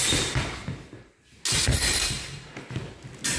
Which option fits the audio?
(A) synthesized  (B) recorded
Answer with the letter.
B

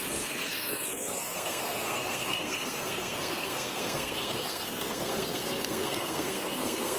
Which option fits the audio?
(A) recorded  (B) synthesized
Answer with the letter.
B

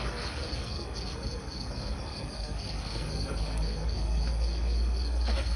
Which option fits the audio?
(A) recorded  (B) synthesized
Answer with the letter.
B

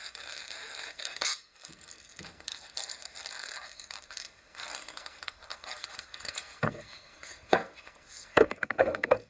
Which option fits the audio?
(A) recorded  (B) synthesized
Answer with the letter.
B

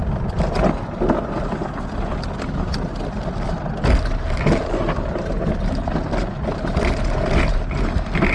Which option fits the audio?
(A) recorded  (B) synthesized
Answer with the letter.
A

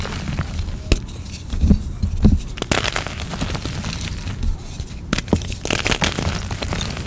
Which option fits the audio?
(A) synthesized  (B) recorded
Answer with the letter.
B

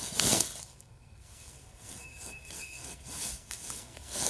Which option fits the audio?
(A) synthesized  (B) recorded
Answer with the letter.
A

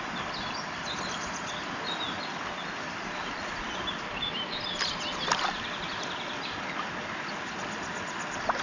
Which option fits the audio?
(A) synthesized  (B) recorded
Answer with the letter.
B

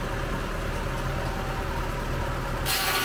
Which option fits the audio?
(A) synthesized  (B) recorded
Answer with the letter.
B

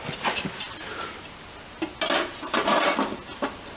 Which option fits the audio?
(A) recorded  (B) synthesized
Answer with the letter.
A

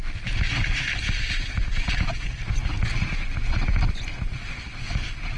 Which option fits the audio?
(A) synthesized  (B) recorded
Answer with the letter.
B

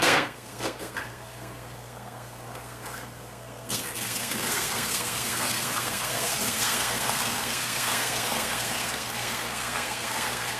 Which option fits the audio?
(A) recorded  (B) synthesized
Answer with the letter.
B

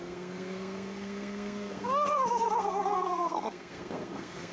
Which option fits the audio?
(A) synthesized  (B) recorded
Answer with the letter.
A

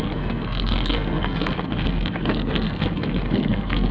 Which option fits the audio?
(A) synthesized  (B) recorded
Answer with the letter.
A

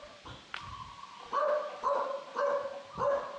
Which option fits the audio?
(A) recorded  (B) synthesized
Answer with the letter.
A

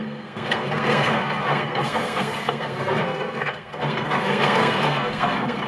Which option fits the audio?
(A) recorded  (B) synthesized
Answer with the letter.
B